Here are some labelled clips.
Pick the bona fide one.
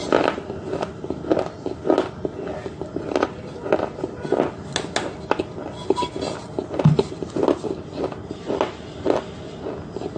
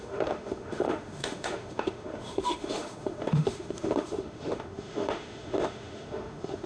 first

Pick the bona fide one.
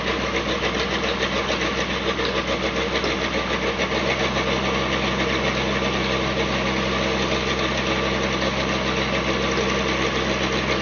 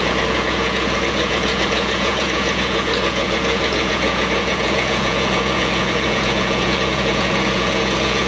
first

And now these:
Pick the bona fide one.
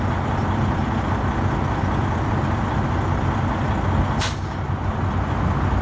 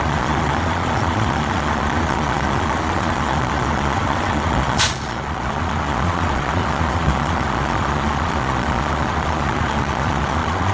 first